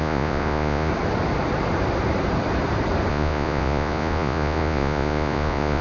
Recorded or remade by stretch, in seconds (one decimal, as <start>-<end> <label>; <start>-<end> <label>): 0.0-0.9 remade; 0.9-3.1 recorded; 3.1-5.8 remade